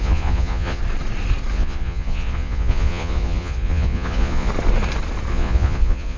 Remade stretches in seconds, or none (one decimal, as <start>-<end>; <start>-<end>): 0.0-0.8; 1.5-4.5; 5.3-6.2